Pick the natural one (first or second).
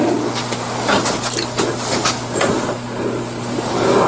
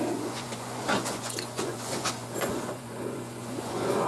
first